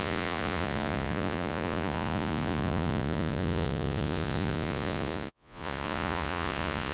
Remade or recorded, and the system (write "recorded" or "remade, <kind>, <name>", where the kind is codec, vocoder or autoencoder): remade, vocoder, Vocos